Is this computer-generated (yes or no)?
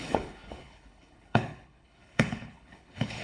yes